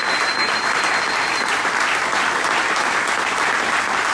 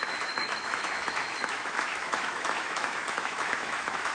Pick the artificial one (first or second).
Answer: second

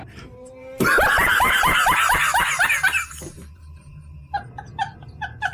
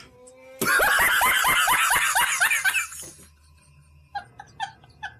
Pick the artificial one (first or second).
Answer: first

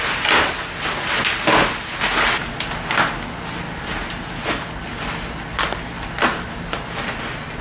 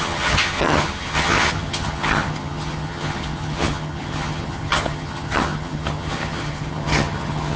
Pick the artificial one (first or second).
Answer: second